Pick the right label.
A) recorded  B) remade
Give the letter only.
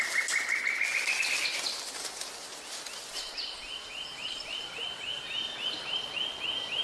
A